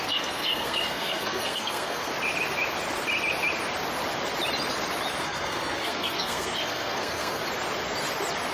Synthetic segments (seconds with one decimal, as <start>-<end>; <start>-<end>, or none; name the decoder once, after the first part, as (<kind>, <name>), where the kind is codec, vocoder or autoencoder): 0.0-2.1 (codec, SNAC); 5.2-7.4